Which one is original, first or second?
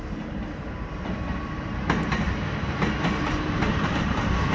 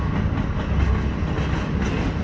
second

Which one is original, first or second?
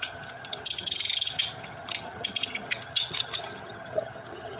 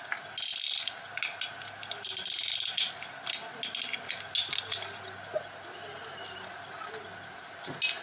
second